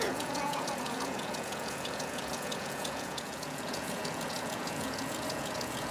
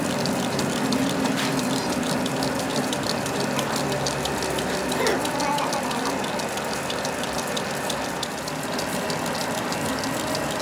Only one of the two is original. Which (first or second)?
second